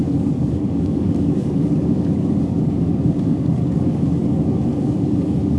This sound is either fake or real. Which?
fake